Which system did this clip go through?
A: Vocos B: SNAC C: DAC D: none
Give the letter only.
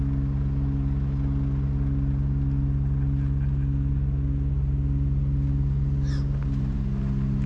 D